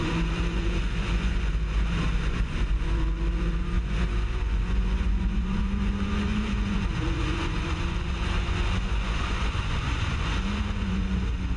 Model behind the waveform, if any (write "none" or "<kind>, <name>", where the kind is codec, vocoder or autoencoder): vocoder, Vocos